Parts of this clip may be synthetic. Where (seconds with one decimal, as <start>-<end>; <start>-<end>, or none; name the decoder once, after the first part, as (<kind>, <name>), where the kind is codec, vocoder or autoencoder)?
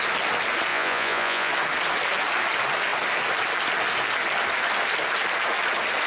0.7-1.5 (vocoder, Vocos)